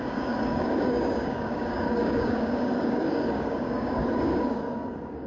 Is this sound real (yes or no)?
no